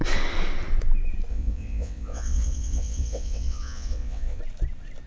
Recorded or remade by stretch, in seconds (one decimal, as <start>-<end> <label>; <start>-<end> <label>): 0.0-1.3 recorded; 1.3-4.4 remade; 4.4-5.1 recorded